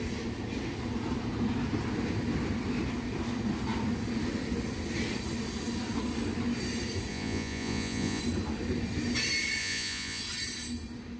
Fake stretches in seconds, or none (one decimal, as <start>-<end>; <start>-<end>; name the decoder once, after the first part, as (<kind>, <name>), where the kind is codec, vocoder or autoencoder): 7.1-8.2 (vocoder, Vocos); 9.6-10.2